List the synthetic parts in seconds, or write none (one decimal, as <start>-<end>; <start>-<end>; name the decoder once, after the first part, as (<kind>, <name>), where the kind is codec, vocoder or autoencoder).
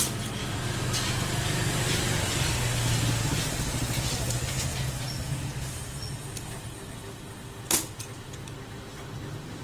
none